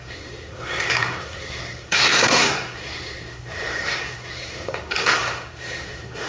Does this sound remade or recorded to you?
remade